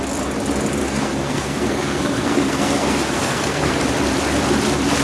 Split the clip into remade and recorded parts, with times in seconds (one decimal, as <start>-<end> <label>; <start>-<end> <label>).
0.0-0.8 recorded; 0.8-3.8 remade; 3.8-5.0 recorded